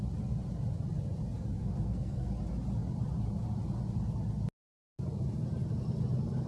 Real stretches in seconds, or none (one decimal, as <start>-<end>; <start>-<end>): 0.0-1.6; 2.3-6.5